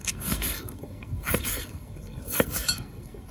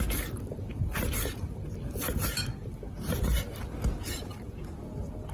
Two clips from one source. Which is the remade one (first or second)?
first